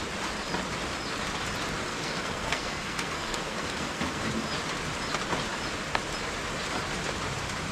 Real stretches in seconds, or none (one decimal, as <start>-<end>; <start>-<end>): 0.0-1.9; 4.3-7.7

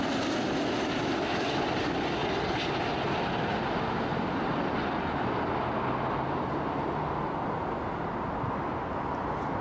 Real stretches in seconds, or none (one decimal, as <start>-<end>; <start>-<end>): 0.0-9.6

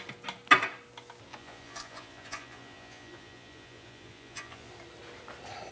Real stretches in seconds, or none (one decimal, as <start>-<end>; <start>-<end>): 0.0-1.3; 4.7-5.7